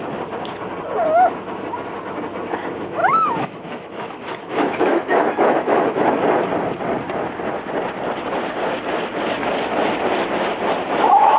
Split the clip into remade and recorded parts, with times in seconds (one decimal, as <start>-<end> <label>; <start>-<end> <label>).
0.0-3.0 recorded; 3.0-6.2 remade; 6.2-11.4 recorded